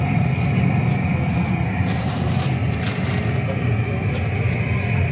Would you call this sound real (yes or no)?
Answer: yes